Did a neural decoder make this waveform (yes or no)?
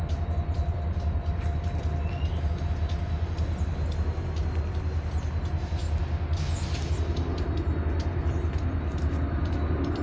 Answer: no